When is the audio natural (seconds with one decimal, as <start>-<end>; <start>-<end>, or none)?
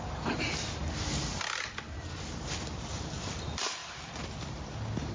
0.0-5.1